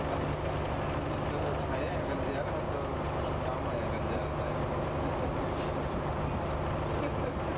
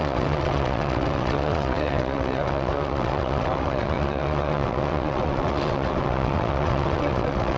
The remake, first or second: second